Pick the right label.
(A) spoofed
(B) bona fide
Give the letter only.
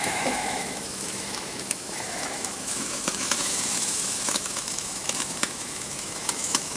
A